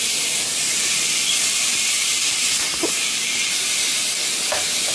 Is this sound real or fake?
real